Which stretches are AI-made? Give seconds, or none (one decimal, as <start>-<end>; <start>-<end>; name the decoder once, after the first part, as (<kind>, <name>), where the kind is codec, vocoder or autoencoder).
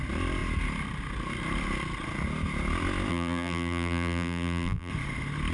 3.1-4.9 (vocoder, BigVGAN v2)